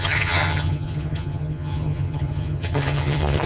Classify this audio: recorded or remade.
remade